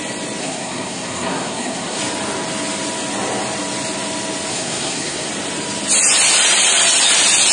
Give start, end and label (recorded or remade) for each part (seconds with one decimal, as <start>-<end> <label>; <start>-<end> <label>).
0.0-0.4 recorded; 0.4-2.0 remade; 2.0-4.5 recorded; 4.5-5.3 remade; 5.3-7.5 recorded